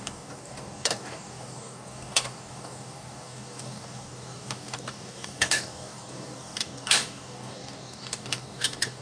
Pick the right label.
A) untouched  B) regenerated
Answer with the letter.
B